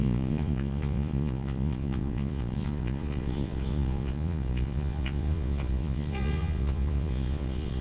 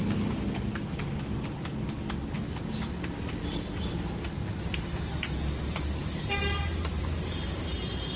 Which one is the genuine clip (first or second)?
second